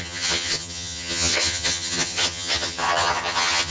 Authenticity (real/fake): fake